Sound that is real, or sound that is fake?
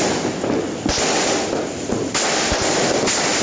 real